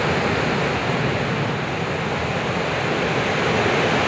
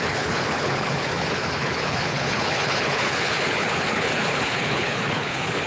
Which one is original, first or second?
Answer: first